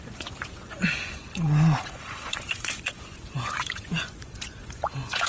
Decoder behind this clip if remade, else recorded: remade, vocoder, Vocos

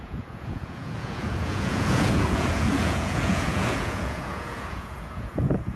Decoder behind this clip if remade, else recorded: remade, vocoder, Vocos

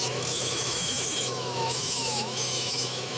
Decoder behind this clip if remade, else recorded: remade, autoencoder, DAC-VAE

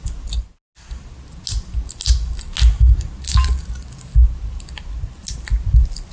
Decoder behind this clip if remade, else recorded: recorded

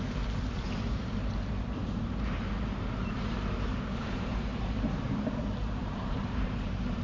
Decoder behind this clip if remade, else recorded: remade, vocoder, BigVGAN v2